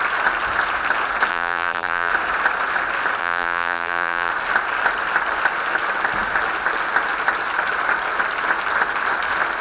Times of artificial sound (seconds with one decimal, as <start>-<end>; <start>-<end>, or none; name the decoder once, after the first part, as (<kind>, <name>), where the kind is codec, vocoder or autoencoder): 1.3-2.1 (vocoder, BigVGAN v2); 3.2-4.3